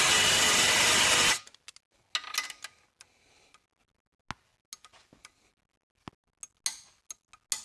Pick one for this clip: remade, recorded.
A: recorded